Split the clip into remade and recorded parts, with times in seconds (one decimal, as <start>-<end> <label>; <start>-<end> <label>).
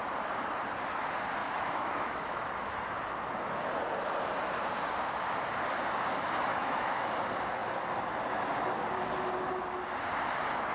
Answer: 0.0-1.4 recorded; 1.4-2.5 remade; 2.5-6.5 recorded; 6.5-7.1 remade; 7.1-10.7 recorded